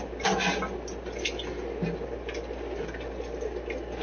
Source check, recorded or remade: recorded